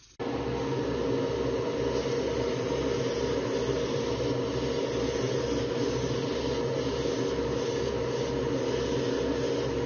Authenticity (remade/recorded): recorded